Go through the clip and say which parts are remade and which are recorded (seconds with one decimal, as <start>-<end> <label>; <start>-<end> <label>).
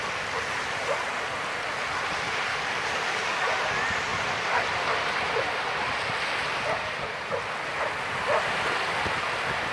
0.0-2.5 recorded; 2.5-3.5 remade; 3.5-9.7 recorded